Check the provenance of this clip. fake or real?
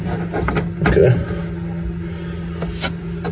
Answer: real